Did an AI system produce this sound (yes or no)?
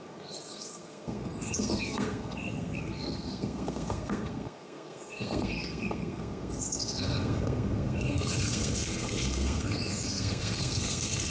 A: yes